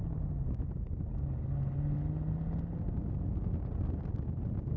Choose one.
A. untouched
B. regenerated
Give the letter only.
A